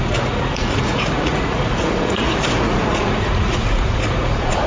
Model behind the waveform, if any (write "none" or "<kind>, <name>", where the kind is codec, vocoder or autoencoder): vocoder, Vocos